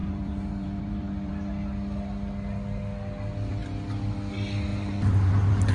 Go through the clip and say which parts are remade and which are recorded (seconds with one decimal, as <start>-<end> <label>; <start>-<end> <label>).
0.0-1.3 remade; 1.3-4.7 recorded; 4.7-5.3 remade; 5.3-5.7 recorded